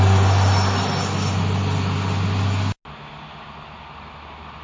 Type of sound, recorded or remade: recorded